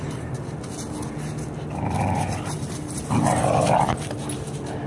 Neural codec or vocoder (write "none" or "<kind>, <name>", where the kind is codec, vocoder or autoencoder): none